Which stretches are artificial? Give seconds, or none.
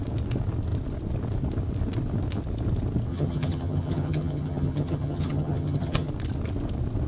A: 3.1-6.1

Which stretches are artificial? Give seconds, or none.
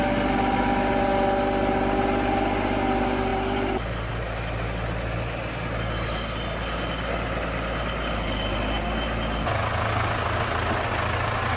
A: none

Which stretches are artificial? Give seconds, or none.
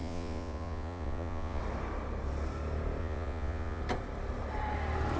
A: 0.0-1.6; 3.0-3.8